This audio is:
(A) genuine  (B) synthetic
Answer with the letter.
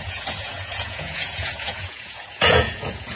B